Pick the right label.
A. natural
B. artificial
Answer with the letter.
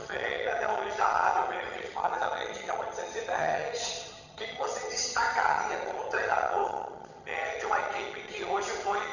B